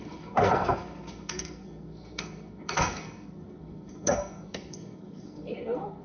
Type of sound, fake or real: fake